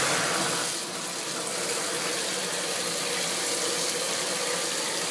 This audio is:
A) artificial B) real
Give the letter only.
B